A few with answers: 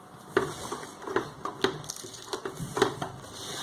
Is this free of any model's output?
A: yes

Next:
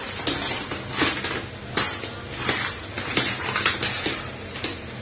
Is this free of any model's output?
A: yes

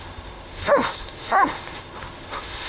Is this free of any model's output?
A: no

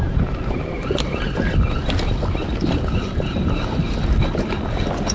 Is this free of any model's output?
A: yes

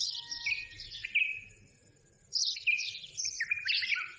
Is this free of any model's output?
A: yes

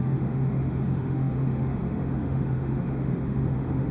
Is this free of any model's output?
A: no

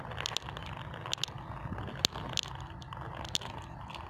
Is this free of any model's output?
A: yes